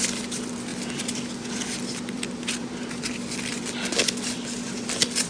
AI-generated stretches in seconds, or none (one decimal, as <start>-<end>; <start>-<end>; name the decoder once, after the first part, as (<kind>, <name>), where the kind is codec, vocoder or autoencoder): none